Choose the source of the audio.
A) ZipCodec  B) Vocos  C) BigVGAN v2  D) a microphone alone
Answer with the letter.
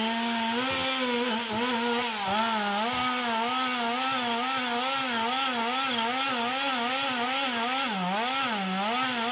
D